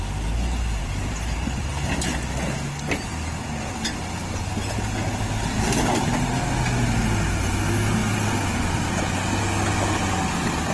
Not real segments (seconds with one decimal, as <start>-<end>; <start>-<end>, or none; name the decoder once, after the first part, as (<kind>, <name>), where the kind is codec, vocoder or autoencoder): 0.8-1.7 (vocoder, BigVGAN v2)